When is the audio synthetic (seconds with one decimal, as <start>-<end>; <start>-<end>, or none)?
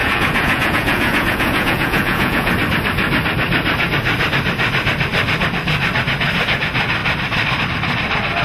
0.0-2.5